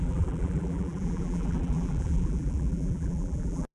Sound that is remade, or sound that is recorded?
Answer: remade